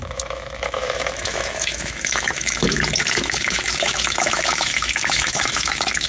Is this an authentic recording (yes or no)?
no